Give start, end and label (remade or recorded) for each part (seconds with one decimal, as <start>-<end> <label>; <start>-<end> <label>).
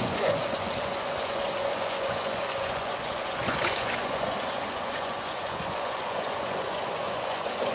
0.0-7.7 remade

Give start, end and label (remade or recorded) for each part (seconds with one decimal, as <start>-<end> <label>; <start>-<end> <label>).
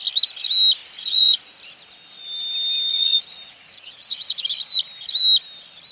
0.0-0.8 recorded; 0.8-1.6 remade; 1.6-2.9 recorded; 2.9-4.4 remade; 4.4-5.9 recorded